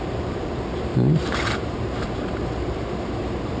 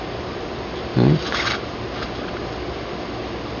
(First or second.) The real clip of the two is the second